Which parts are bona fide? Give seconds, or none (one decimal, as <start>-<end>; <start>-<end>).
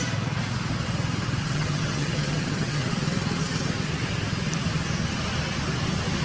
0.0-1.4; 2.9-6.2